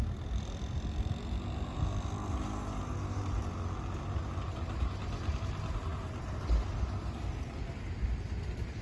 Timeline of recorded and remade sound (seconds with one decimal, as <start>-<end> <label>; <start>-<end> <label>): 0.0-8.8 recorded